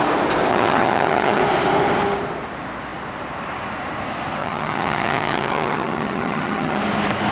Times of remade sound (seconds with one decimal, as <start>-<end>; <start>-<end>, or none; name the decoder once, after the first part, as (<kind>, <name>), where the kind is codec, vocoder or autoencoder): 0.5-1.4 (vocoder, HiFi-GAN); 4.4-6.8